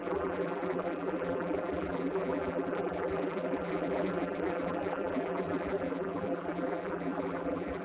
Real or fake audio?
fake